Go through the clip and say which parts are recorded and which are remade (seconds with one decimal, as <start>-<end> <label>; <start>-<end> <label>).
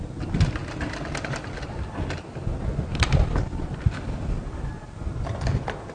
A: 0.0-5.9 recorded